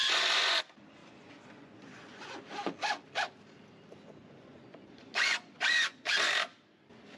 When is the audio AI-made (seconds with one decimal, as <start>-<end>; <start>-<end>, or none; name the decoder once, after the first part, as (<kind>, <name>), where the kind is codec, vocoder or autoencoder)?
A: 0.0-0.6 (vocoder, Vocos); 1.0-2.4; 4.2-6.3